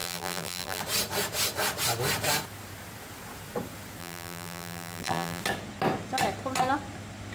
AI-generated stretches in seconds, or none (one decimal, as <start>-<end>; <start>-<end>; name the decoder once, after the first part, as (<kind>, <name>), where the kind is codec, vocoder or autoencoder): 0.0-0.8 (vocoder, BigVGAN v2); 4.0-5.4